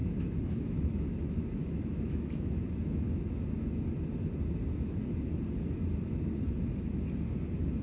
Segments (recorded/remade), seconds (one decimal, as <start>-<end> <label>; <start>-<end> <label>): 0.0-3.8 remade; 3.8-7.8 recorded

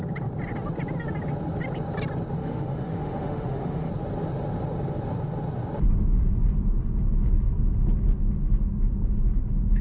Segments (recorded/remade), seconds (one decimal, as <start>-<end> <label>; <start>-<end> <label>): 0.0-2.4 recorded; 2.4-3.9 remade; 3.9-9.8 recorded